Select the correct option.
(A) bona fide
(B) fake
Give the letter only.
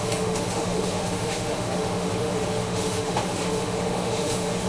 B